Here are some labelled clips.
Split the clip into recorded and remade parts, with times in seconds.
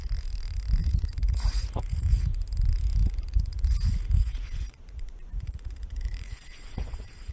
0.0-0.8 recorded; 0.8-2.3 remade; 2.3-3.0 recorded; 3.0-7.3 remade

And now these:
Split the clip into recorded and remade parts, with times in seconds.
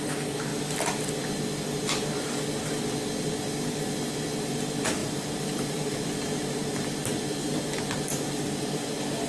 0.0-0.5 remade; 0.5-4.4 recorded; 4.4-9.3 remade